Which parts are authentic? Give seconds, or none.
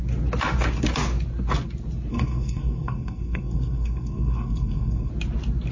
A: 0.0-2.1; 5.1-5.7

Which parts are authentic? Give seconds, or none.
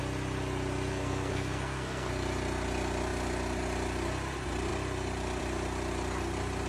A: 0.0-0.9; 2.1-6.7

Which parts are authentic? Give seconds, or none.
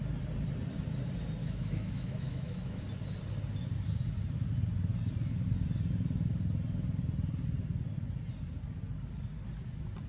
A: 0.0-1.4; 2.8-10.1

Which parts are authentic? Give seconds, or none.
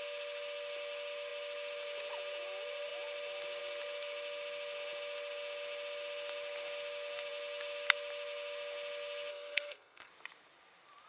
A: 0.0-9.3; 10.1-11.1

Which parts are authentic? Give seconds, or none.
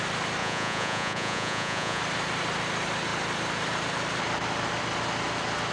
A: 0.0-0.4; 2.0-5.7